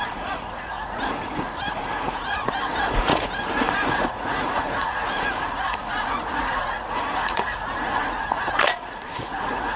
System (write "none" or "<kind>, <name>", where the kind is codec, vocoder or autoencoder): vocoder, Vocos